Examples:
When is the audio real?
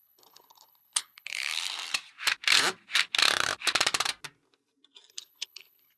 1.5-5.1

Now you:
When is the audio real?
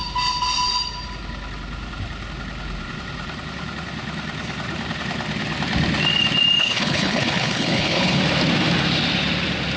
0.0-6.6; 8.2-9.8